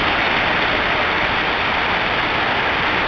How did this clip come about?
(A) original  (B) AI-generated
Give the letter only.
A